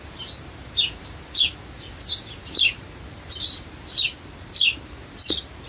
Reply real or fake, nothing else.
real